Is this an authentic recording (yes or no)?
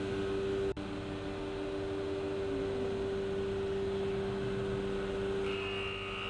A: yes